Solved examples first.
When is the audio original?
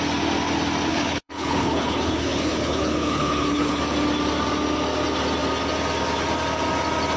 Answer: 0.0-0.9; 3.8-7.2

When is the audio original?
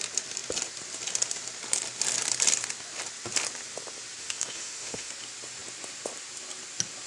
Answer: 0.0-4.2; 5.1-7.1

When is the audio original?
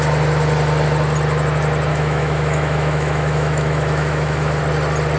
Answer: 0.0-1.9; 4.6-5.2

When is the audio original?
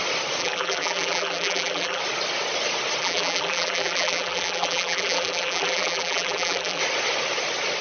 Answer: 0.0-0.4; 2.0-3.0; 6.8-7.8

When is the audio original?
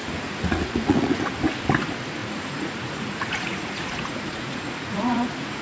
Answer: 1.2-2.2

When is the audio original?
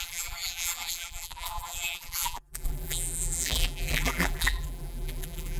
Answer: none